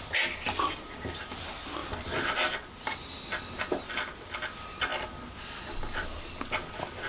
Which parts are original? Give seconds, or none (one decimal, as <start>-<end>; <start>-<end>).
0.0-7.1